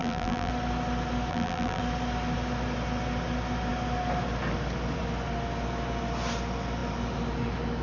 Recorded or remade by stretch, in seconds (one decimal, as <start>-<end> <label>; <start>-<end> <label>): 0.0-0.5 remade; 0.5-1.3 recorded; 1.3-1.8 remade; 1.8-7.8 recorded